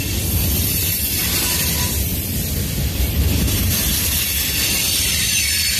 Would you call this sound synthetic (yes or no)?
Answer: no